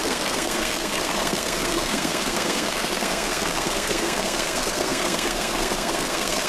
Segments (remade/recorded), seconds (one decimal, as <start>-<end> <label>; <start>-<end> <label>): 0.0-6.5 remade